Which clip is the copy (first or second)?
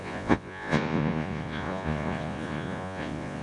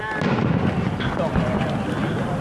first